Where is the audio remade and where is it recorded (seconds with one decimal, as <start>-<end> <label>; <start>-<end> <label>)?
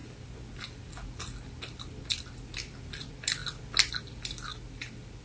0.0-5.2 recorded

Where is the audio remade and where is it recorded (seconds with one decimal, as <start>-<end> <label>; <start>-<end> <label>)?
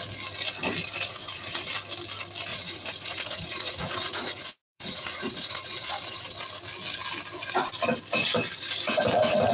0.0-1.1 recorded; 1.1-1.7 remade; 1.7-2.5 recorded; 2.5-6.2 remade; 6.2-9.5 recorded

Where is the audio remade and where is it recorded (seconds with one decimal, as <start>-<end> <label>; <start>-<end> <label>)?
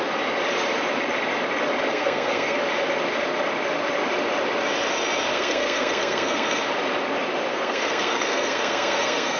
0.0-1.9 recorded; 1.9-2.6 remade; 2.6-5.3 recorded; 5.3-6.6 remade; 6.6-7.5 recorded; 7.5-9.4 remade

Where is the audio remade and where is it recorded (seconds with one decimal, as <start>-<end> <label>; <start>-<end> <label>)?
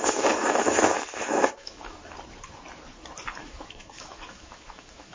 0.0-2.0 remade; 2.0-3.4 recorded; 3.4-5.1 remade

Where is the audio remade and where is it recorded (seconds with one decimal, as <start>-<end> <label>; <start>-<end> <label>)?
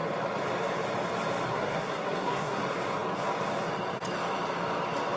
0.0-1.5 recorded; 1.5-2.6 remade; 2.6-5.2 recorded